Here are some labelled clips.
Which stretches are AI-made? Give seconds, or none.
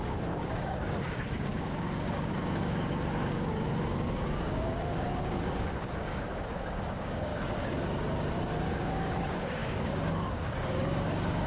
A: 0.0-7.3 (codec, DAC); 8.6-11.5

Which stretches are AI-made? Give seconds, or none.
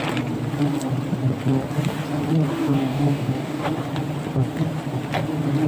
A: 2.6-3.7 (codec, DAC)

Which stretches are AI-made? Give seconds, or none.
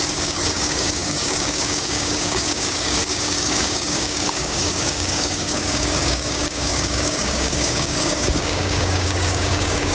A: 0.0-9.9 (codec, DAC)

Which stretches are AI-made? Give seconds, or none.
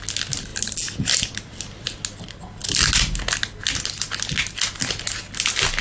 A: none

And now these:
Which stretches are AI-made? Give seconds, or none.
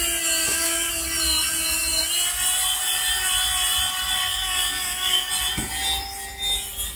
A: 0.4-0.9 (codec, DAC); 4.3-5.3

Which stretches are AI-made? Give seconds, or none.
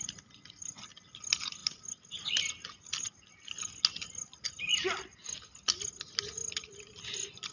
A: none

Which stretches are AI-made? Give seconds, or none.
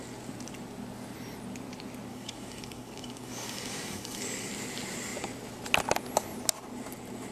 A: 2.1-4.5 (codec, DAC)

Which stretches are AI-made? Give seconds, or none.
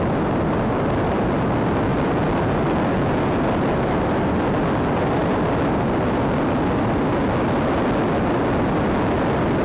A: none